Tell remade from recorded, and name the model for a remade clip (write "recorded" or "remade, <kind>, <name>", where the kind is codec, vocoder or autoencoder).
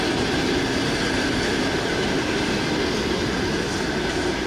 recorded